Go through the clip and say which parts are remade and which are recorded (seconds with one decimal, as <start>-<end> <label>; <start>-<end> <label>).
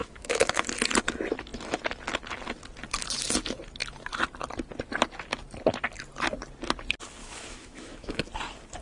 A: 0.0-0.7 remade; 0.7-7.2 recorded; 7.2-8.2 remade; 8.2-8.8 recorded